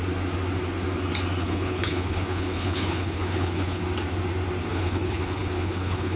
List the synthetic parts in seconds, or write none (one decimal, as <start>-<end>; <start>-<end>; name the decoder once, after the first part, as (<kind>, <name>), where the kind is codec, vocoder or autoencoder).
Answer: 1.4-3.8 (codec, HILCodec); 4.7-6.2